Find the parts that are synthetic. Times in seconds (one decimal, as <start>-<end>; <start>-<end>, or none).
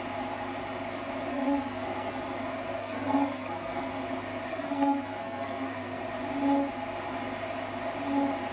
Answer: 1.3-2.2; 2.8-3.9; 4.5-6.0